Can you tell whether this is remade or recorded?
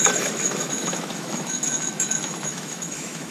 remade